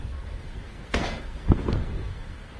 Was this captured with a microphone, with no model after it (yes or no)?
no